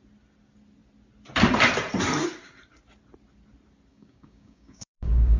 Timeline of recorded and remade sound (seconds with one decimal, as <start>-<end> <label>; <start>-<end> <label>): 0.0-3.9 recorded; 3.9-5.4 remade